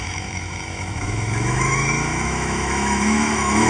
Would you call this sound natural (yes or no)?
no